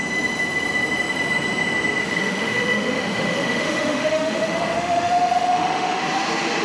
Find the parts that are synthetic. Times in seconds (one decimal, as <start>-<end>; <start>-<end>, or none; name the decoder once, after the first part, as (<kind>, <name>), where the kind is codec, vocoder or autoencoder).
2.0-6.0 (autoencoder, DAC-VAE)